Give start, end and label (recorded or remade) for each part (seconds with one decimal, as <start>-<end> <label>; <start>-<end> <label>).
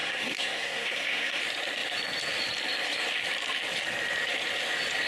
0.0-1.4 remade; 1.4-5.1 recorded